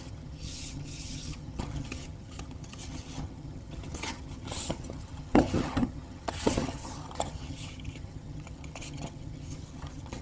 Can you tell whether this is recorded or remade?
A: remade